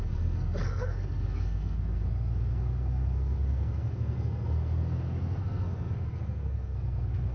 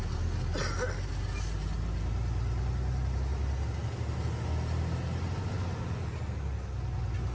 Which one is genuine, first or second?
second